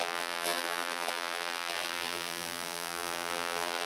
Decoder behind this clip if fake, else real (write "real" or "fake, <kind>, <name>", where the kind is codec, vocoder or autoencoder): fake, vocoder, BigVGAN v2